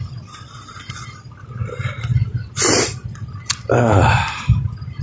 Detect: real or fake real